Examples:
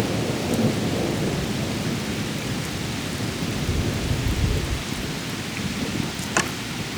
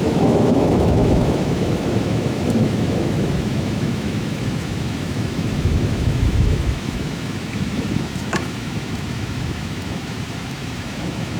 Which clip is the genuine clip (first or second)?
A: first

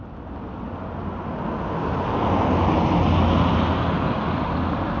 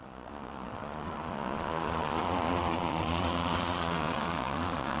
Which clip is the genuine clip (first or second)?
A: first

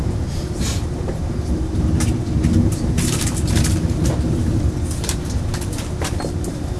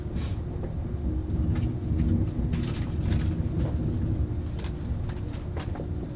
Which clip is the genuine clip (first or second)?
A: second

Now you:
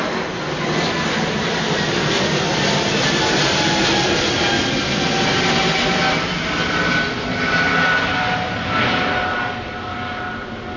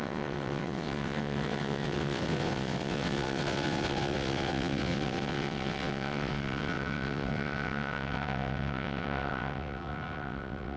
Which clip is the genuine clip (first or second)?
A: first